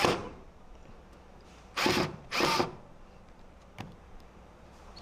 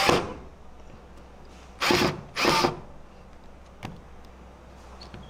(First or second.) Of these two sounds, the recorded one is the second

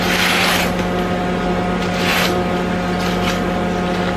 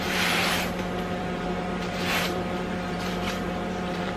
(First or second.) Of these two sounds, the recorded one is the first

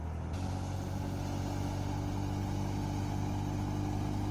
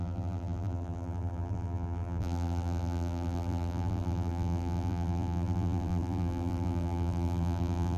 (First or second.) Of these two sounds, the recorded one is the first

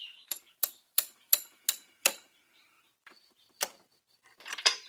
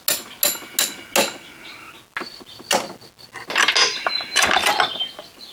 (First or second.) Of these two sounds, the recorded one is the second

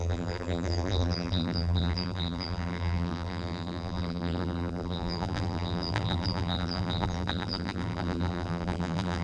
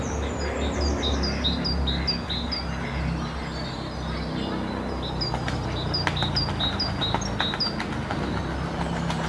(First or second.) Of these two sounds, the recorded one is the second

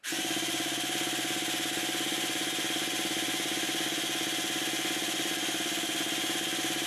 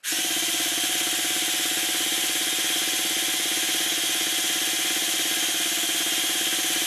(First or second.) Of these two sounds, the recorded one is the second